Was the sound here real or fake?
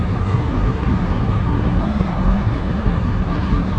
fake